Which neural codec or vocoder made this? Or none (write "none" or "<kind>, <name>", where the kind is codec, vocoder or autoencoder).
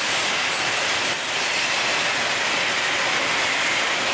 none